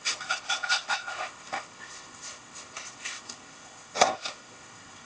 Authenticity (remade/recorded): remade